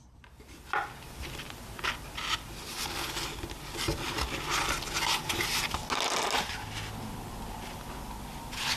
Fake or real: real